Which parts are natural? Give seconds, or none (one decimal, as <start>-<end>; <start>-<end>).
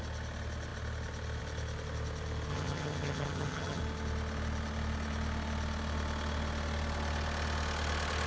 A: 0.0-2.5; 3.8-8.3